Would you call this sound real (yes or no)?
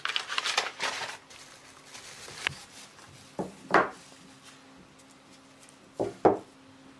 yes